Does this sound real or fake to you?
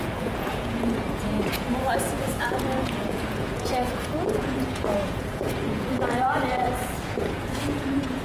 fake